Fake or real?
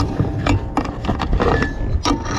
real